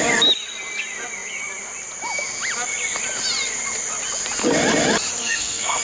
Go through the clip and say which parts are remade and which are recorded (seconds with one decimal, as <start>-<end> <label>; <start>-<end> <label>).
0.0-5.2 recorded; 5.2-5.8 remade